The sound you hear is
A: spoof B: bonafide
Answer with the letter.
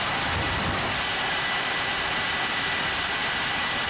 B